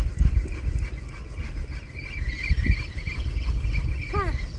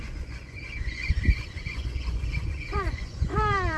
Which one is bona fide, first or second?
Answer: first